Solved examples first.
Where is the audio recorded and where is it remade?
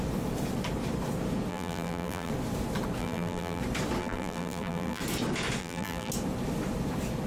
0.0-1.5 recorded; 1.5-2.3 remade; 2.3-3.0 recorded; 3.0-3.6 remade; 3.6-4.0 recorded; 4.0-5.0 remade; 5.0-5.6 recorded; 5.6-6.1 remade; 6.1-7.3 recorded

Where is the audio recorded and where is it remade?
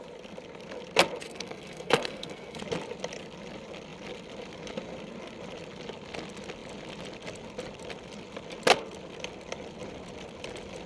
0.0-1.2 recorded; 1.2-2.6 remade; 2.6-10.9 recorded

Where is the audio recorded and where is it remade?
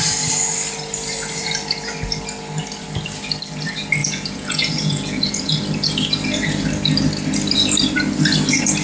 0.0-4.0 recorded; 4.0-5.6 remade; 5.6-8.8 recorded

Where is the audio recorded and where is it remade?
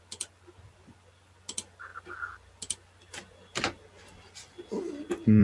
0.0-5.4 recorded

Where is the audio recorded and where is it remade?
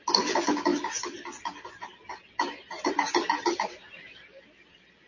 0.0-0.7 remade; 0.7-2.9 recorded; 2.9-5.1 remade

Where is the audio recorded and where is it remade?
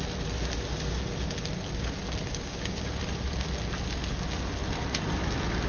0.0-2.3 recorded; 2.3-3.0 remade; 3.0-5.7 recorded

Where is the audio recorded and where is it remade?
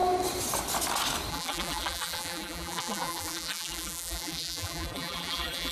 0.0-1.3 recorded; 1.3-5.7 remade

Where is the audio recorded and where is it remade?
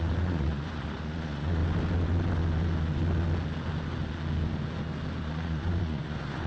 0.0-1.6 remade; 1.6-5.2 recorded; 5.2-6.5 remade